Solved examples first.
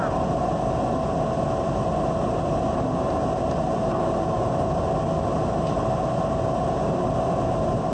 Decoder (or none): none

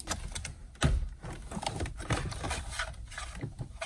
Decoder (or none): none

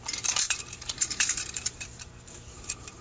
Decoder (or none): vocoder, BigVGAN v2